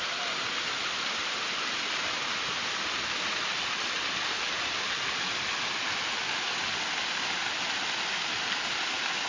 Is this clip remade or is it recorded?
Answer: recorded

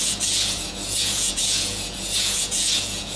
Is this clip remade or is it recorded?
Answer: remade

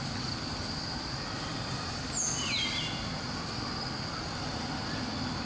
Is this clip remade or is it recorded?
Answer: recorded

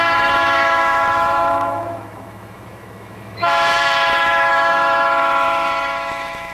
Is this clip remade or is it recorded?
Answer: remade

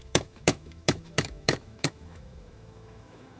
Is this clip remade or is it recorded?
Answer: remade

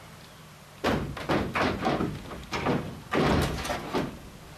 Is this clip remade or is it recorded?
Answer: recorded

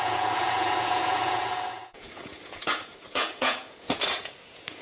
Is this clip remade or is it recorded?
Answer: remade